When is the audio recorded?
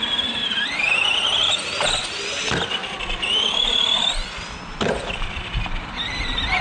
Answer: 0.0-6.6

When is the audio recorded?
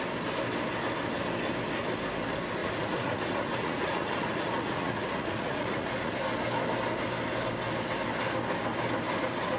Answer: 0.0-2.6; 6.1-9.6